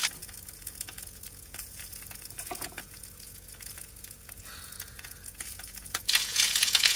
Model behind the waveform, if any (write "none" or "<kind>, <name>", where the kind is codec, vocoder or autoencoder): vocoder, Vocos